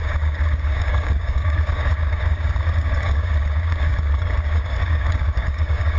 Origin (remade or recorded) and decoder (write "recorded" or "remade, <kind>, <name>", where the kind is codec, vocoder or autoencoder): remade, codec, DAC